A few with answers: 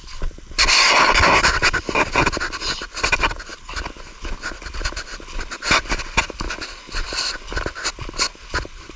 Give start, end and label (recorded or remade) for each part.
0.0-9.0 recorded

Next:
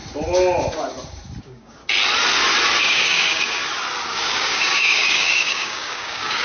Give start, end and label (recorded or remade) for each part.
0.0-1.4 recorded; 1.4-1.8 remade; 1.8-2.8 recorded; 2.8-3.6 remade; 3.6-4.1 recorded; 4.1-6.4 remade

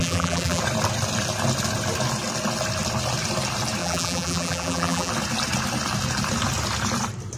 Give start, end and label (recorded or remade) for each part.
0.0-0.6 remade; 0.6-3.8 recorded; 3.8-5.1 remade; 5.1-7.4 recorded